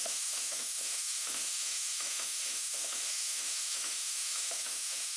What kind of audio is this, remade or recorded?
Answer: remade